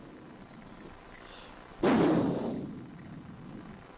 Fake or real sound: real